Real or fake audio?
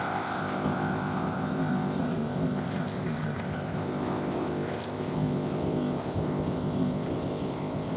fake